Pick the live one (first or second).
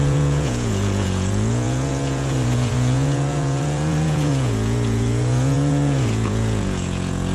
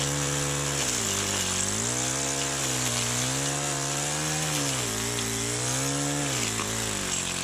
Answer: second